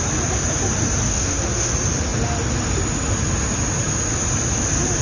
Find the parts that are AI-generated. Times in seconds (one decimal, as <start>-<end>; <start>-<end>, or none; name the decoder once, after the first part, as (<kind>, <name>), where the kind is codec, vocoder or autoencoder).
1.1-1.7 (codec, SNAC)